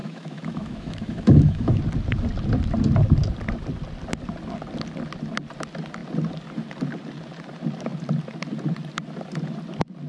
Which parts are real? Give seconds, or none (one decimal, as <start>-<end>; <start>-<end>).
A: 1.8-10.1